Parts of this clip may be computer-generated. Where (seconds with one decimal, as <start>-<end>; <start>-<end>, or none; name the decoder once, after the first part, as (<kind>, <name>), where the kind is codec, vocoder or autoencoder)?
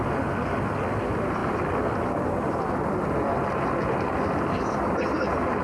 none